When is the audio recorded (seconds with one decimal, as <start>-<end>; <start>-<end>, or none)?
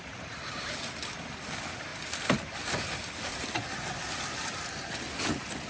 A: 0.0-5.7